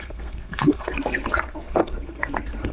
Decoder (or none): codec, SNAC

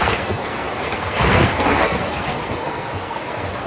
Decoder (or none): codec, SNAC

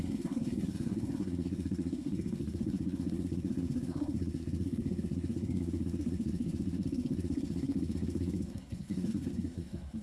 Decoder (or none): codec, SNAC